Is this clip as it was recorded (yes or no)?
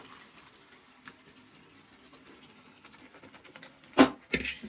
yes